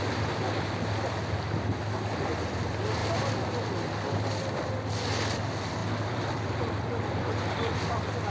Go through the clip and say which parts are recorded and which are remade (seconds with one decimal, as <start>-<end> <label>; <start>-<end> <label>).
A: 0.0-5.8 recorded; 5.8-7.4 remade; 7.4-8.3 recorded